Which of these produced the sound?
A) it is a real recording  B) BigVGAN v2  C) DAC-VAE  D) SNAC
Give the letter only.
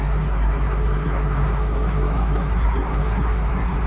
D